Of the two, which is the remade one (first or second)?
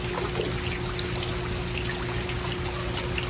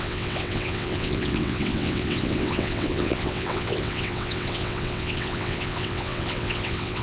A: second